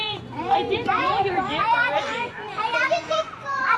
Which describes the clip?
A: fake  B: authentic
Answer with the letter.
A